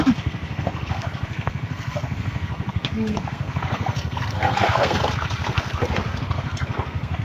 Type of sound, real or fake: fake